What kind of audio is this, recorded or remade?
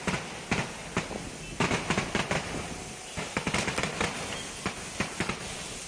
recorded